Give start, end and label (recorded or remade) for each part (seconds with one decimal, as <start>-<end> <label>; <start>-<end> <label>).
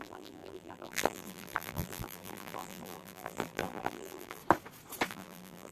0.0-4.4 remade; 4.4-5.1 recorded; 5.1-5.7 remade